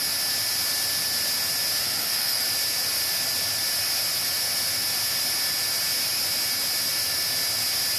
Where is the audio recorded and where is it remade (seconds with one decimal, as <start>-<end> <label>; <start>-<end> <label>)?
0.0-1.8 recorded; 1.8-2.4 remade; 2.4-8.0 recorded